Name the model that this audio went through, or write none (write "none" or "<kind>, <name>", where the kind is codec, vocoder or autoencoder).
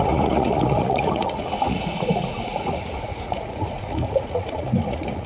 vocoder, Vocos